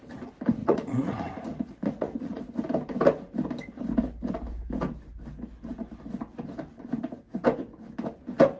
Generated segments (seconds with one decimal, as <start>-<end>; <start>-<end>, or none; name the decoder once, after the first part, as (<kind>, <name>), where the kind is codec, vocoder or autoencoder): 0.6-2.4 (vocoder, Vocos)